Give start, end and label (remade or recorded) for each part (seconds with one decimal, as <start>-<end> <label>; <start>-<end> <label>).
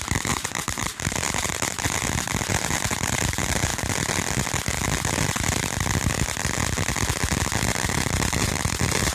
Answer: 0.0-2.0 remade; 2.0-2.5 recorded; 2.5-3.7 remade; 3.7-7.7 recorded; 7.7-9.1 remade